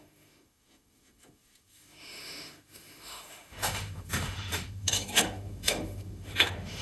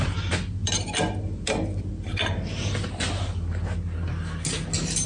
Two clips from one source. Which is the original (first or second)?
second